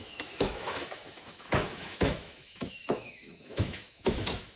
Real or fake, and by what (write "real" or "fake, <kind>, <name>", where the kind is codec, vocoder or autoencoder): fake, autoencoder, DAC-VAE